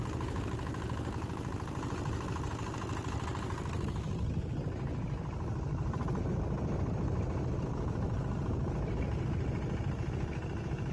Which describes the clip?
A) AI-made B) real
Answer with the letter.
B